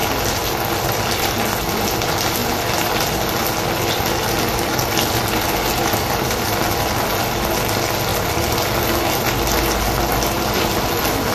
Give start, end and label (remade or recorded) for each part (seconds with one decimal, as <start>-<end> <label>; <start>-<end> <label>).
0.0-11.3 recorded